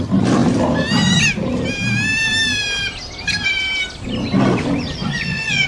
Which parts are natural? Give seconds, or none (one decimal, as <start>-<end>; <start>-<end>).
0.0-5.0